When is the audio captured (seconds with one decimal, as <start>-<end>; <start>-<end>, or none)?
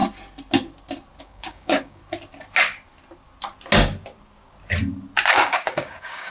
0.0-1.2; 2.0-5.3